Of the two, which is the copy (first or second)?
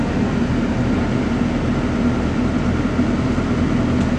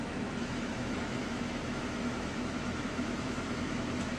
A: second